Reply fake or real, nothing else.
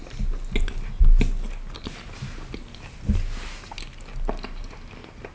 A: real